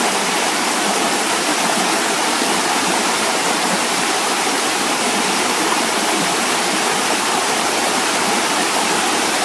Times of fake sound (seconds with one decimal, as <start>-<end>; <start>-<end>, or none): 0.0-1.5; 2.6-9.4